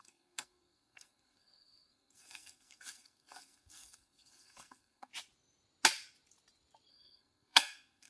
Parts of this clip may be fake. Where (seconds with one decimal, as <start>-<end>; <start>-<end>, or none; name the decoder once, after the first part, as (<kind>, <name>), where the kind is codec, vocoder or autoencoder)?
0.0-5.1 (codec, SNAC); 6.9-8.1